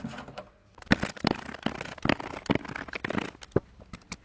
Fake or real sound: real